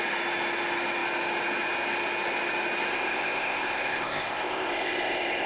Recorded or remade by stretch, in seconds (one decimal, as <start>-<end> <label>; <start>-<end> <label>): 0.0-2.9 recorded; 2.9-5.5 remade